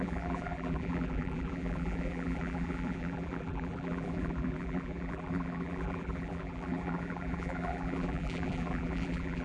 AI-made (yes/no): yes